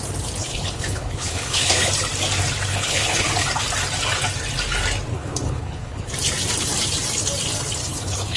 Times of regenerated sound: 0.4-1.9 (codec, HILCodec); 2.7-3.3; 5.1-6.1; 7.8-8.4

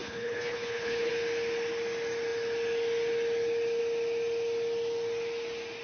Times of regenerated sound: 0.0-1.1 (codec, HILCodec)

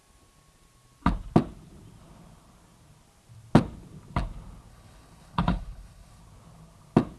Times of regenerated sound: 4.7-6.2 (codec, HILCodec)